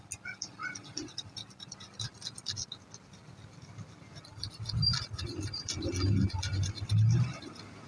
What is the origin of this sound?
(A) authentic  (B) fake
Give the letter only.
A